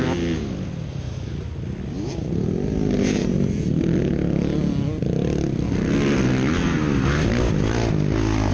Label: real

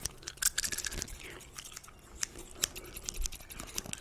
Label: real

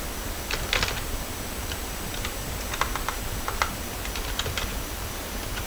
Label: real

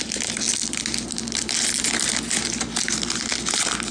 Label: real